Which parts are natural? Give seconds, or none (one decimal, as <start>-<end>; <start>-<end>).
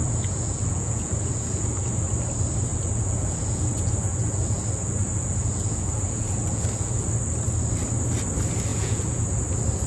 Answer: 1.9-2.7; 7.1-8.7; 9.4-9.9